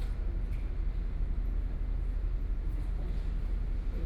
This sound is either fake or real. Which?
real